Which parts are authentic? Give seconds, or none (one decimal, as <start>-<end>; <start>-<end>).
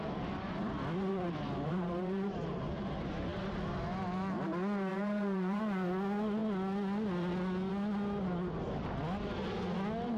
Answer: 0.0-1.1; 2.6-4.9; 5.6-10.2